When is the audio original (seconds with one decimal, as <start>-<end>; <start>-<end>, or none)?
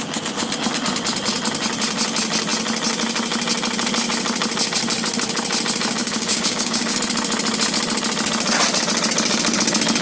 0.0-6.0; 7.0-10.0